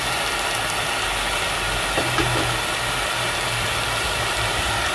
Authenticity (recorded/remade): recorded